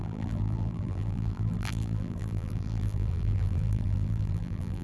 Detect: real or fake fake